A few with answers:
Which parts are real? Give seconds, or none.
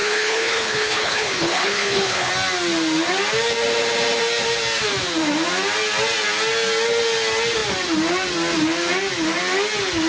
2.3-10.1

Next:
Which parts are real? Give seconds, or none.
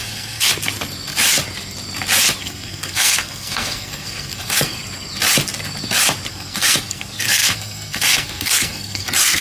0.5-2.4; 4.8-6.3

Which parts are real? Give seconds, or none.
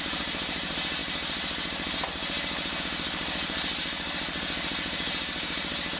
none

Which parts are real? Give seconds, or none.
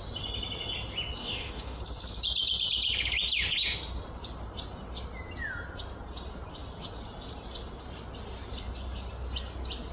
0.0-1.2; 1.8-9.9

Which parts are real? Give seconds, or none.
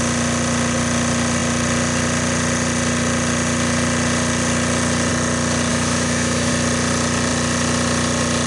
0.0-5.7; 6.5-8.5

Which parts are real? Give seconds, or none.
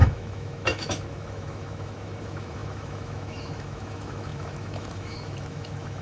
none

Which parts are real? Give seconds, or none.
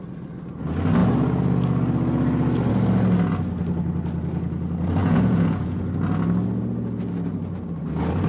0.0-5.0; 5.8-8.3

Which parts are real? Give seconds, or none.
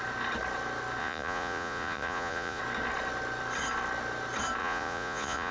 0.0-1.0; 2.6-4.6